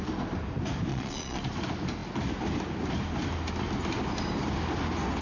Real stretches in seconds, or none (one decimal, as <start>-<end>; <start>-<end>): 0.0-0.9; 1.4-5.2